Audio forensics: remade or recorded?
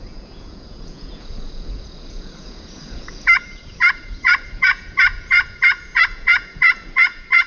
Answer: remade